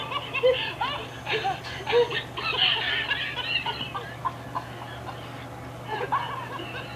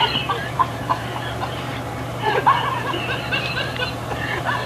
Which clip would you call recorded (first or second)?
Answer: first